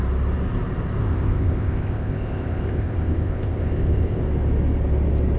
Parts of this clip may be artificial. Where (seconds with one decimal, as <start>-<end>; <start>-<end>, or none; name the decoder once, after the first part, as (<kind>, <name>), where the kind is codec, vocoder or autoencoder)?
1.0-4.2 (codec, ZipCodec)